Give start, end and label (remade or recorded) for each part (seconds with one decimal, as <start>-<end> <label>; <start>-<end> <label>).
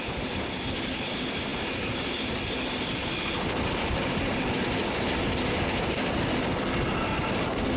0.0-7.8 recorded